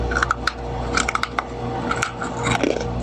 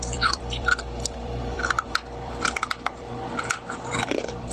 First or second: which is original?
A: first